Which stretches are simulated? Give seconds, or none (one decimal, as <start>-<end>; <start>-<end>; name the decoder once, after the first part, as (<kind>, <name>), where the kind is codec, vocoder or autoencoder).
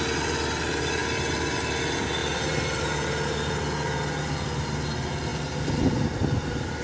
none